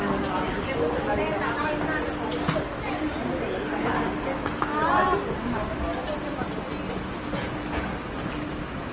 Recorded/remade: recorded